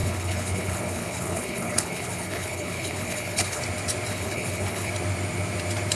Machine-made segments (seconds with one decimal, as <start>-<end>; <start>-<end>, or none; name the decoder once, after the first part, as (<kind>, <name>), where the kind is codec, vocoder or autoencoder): 0.0-3.6 (codec, HILCodec); 4.1-4.9